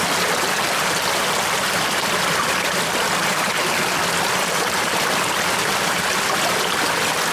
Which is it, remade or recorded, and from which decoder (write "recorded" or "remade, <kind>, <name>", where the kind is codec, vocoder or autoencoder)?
recorded